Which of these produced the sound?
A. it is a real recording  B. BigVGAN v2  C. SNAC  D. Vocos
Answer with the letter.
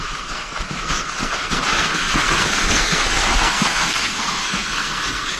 C